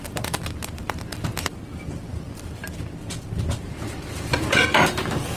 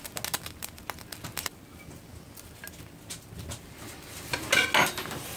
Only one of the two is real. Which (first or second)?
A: second